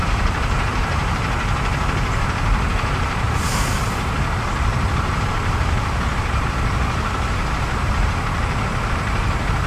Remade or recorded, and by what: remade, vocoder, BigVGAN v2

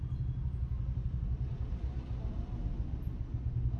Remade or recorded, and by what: recorded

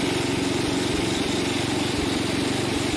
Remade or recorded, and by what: recorded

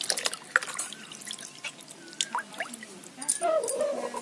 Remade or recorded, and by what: recorded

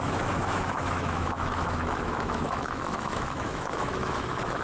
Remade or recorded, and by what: remade, autoencoder, DAC-VAE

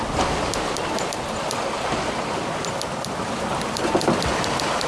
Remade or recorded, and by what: recorded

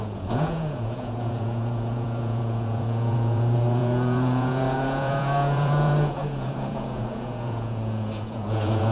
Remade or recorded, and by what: remade, vocoder, Vocos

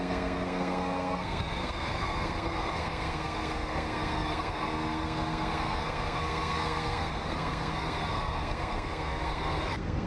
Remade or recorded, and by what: remade, codec, SNAC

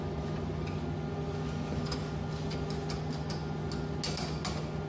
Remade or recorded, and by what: recorded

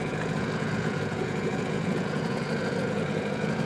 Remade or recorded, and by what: remade, vocoder, Vocos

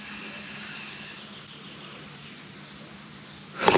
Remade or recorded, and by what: recorded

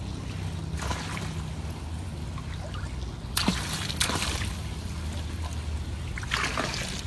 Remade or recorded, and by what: recorded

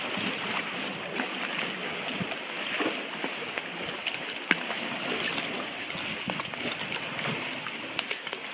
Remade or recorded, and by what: recorded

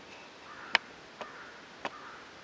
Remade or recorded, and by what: recorded